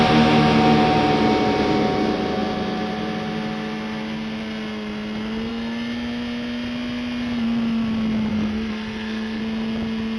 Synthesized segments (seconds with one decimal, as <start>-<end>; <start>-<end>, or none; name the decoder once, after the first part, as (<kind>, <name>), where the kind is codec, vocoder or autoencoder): 8.3-9.4 (codec, SNAC)